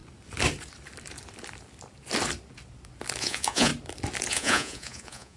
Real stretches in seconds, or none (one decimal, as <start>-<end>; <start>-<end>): 0.0-3.2; 3.7-4.3

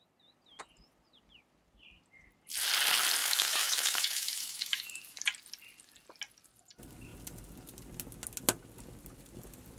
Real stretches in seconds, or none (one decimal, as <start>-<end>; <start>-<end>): 0.0-3.2; 5.2-9.8

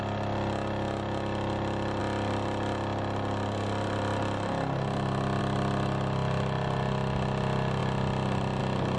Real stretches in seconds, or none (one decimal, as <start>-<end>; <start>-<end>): 0.0-9.0

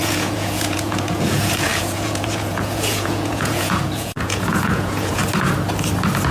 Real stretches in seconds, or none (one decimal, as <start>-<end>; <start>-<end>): 5.2-6.3